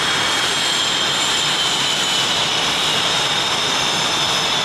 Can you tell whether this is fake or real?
real